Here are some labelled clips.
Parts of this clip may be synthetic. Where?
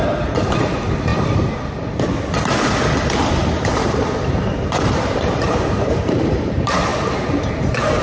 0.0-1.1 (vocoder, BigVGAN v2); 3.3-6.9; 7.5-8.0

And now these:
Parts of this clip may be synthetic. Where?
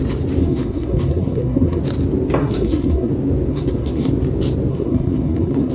0.4-1.8 (codec, SNAC); 2.4-3.1; 3.5-4.1; 4.7-5.7